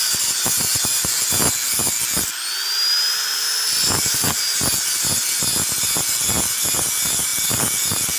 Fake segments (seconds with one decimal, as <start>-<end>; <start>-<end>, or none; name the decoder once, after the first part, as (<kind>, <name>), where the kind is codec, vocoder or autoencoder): none